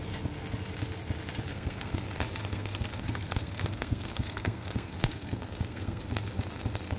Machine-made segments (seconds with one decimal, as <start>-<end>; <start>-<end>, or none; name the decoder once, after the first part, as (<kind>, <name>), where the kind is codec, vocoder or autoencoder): 1.5-2.0 (codec, SNAC); 2.4-6.0